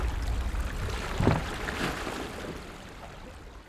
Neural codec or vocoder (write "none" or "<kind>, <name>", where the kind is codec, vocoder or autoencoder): none